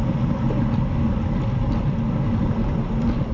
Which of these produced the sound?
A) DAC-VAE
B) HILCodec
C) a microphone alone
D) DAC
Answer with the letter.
C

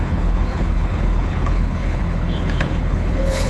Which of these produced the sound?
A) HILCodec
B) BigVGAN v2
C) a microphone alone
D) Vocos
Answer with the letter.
A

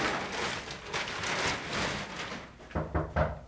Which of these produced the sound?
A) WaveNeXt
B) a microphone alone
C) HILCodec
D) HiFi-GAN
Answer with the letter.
B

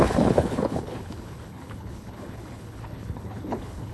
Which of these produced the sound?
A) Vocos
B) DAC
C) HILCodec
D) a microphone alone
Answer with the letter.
C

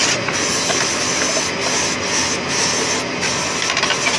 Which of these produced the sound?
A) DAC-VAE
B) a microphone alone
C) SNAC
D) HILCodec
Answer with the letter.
B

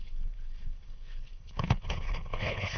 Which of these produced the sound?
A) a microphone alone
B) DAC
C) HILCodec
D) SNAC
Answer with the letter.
C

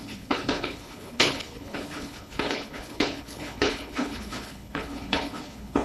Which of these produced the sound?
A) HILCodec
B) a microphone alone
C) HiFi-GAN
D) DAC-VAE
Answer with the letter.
A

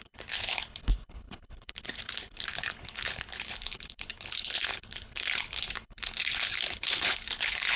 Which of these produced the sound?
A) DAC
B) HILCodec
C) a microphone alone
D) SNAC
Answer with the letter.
B